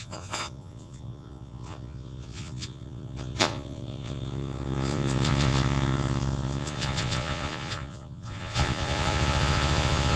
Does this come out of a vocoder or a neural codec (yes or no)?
yes